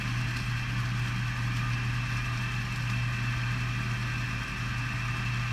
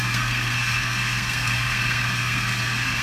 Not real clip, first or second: second